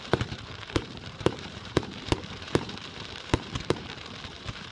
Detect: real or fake fake